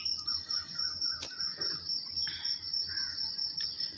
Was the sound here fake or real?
real